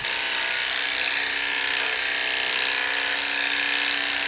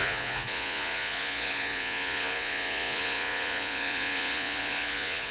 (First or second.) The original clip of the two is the first